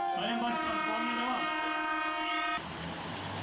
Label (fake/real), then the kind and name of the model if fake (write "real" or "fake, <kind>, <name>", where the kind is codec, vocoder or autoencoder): real